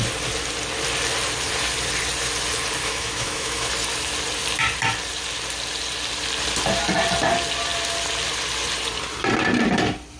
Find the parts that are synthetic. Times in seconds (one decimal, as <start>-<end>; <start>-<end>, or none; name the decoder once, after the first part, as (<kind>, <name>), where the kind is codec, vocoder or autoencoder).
2.8-3.7 (autoencoder, DAC-VAE)